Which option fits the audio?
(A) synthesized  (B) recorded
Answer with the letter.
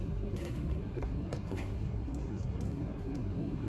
A